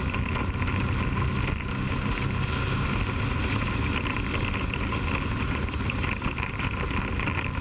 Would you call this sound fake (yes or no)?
no